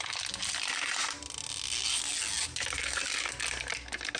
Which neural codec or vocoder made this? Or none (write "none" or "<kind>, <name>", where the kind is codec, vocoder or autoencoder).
none